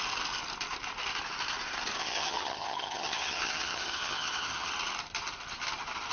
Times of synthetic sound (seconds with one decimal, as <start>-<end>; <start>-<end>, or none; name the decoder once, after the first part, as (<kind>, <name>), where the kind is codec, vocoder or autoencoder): 2.0-4.7 (vocoder, HiFi-GAN)